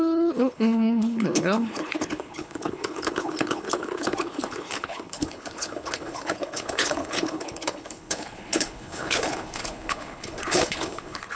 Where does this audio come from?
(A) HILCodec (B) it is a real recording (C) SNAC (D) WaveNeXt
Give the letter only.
A